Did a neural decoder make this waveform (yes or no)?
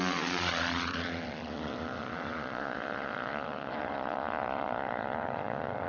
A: yes